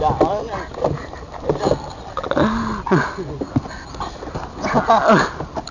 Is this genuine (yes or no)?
yes